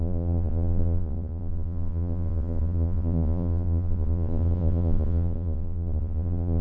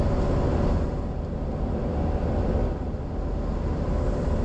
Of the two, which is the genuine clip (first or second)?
second